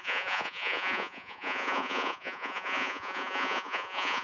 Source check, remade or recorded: remade